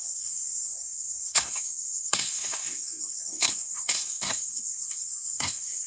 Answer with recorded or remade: remade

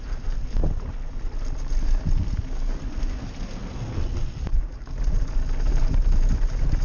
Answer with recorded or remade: recorded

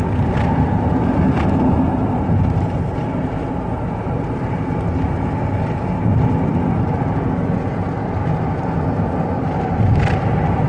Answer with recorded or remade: recorded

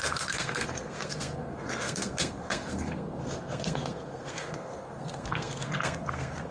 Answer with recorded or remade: remade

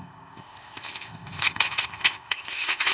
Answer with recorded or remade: remade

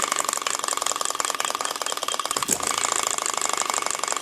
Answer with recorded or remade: recorded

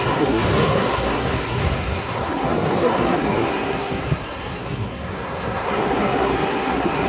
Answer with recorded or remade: remade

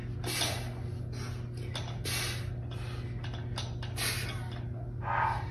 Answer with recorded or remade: recorded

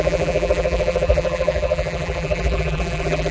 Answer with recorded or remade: remade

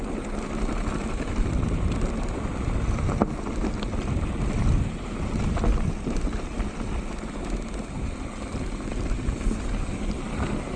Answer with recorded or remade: recorded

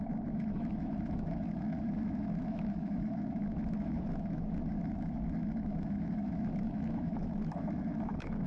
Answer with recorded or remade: remade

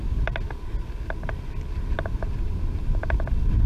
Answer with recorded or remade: recorded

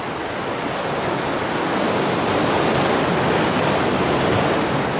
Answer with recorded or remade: recorded